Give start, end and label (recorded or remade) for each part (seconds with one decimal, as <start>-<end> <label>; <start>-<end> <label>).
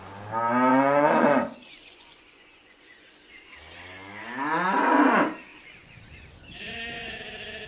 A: 0.0-0.7 recorded; 0.7-3.3 remade; 3.3-5.5 recorded; 5.5-7.2 remade; 7.2-7.7 recorded